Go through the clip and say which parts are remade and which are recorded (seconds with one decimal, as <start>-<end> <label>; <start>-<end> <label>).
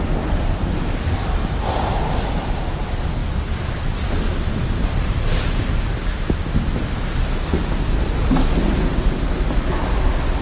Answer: 0.0-10.4 recorded